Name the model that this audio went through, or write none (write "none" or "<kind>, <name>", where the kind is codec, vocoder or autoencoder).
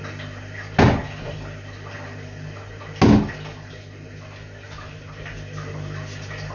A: none